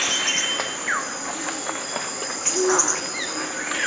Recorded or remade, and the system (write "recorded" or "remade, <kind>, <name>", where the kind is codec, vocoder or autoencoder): recorded